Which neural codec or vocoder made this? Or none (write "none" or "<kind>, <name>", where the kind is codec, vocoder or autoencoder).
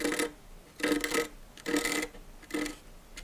none